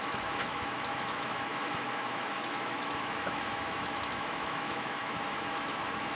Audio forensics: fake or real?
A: fake